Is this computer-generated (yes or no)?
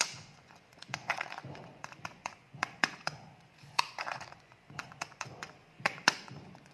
yes